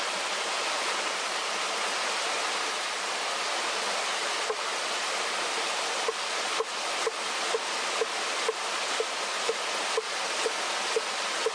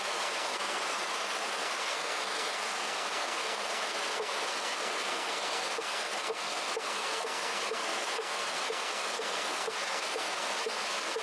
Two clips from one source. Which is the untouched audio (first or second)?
first